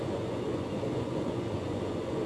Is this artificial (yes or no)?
yes